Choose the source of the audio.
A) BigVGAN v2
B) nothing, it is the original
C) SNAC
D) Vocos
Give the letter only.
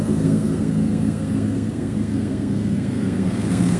C